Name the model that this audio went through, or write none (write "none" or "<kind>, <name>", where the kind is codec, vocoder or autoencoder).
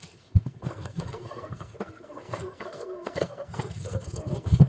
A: codec, SNAC